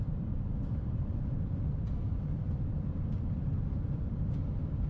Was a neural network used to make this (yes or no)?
yes